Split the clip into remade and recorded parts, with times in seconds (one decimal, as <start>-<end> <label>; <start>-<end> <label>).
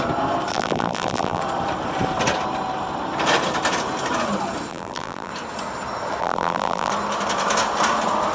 0.0-0.5 recorded; 0.5-1.4 remade; 1.4-4.7 recorded; 4.7-5.3 remade; 5.3-6.2 recorded; 6.2-6.9 remade; 6.9-8.3 recorded